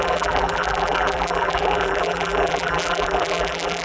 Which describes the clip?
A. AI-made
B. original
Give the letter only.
A